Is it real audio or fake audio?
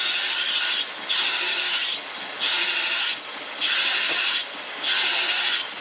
real